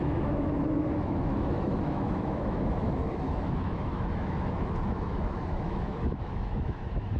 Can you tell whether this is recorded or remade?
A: remade